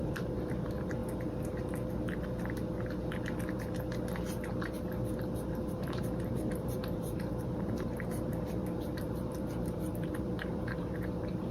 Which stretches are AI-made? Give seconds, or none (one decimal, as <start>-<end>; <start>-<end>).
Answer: 0.0-1.0; 5.2-11.5